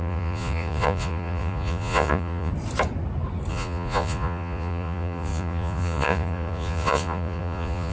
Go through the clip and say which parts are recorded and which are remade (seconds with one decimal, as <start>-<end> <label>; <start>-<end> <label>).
0.0-2.5 remade; 2.5-3.5 recorded; 3.5-7.9 remade